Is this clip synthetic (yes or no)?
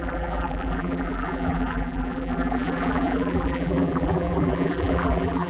yes